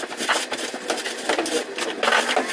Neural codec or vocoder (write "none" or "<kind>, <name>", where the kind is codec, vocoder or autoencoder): none